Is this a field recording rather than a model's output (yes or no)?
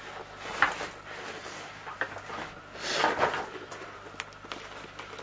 yes